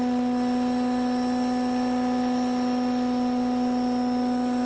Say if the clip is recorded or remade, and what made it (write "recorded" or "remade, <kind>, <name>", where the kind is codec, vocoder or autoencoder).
recorded